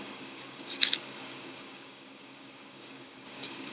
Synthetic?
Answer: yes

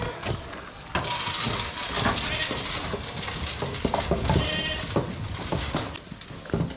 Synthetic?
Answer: no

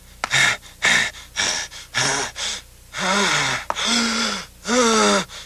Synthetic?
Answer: no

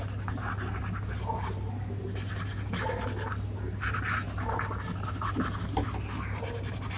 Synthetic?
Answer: no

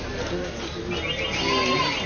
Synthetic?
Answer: no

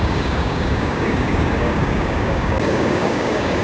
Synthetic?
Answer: yes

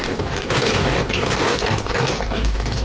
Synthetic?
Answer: yes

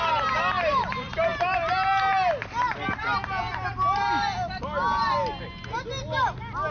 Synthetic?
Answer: no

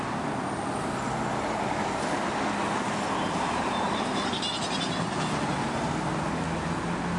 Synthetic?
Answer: no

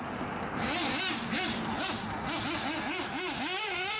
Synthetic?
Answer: no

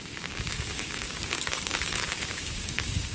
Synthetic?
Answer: yes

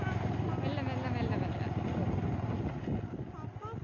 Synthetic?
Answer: no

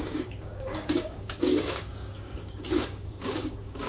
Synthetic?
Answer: yes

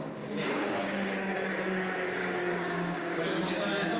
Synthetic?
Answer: yes